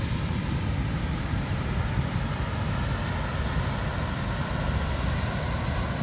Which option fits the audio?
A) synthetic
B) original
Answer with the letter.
B